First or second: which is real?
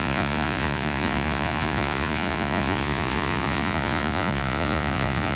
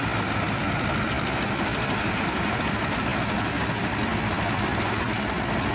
second